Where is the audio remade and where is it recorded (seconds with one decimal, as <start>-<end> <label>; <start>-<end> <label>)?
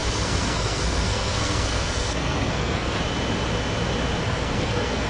0.0-3.0 remade; 3.0-4.2 recorded; 4.2-5.1 remade